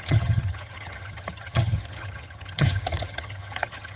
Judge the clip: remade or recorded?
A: remade